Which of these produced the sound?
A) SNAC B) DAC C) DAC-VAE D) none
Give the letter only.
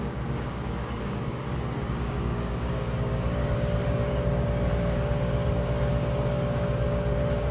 B